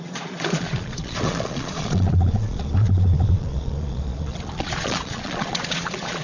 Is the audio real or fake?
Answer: fake